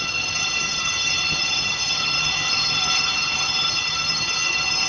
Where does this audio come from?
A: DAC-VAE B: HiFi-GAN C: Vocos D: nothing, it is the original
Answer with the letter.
B